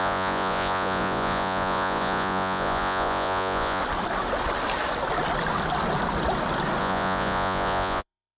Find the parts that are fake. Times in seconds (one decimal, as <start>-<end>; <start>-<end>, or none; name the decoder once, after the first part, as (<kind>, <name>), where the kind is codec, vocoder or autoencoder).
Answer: 0.0-3.8 (vocoder, Vocos); 6.8-8.4